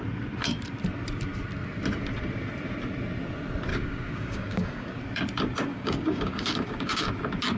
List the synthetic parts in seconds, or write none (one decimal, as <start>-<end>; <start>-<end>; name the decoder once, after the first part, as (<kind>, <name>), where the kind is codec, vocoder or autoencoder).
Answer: 3.7-5.0 (codec, DAC); 5.7-7.1